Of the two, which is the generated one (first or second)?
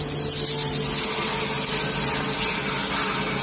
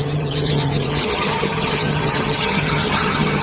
second